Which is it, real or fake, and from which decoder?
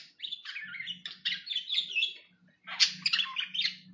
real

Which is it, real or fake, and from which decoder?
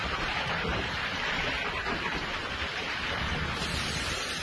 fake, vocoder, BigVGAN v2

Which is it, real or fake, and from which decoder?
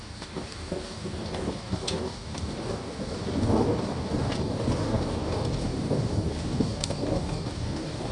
fake, codec, DAC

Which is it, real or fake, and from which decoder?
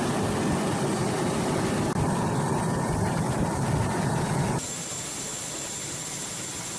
real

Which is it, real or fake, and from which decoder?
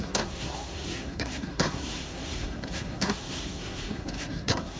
fake, codec, SNAC